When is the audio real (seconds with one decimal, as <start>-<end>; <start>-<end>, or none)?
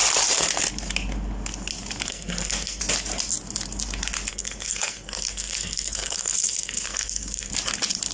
0.0-2.1; 2.8-4.3; 7.5-8.1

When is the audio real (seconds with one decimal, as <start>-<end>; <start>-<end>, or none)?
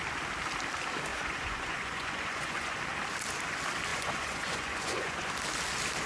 0.0-1.1; 2.8-3.9; 5.3-6.1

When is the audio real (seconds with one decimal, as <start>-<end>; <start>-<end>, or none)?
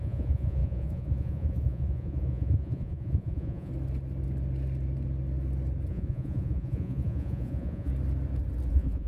3.7-5.9; 7.9-8.7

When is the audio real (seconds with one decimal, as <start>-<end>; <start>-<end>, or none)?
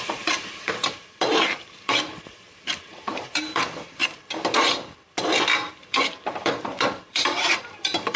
4.0-5.7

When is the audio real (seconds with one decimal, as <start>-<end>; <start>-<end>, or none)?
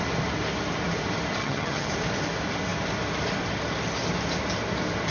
0.0-1.4; 1.9-5.1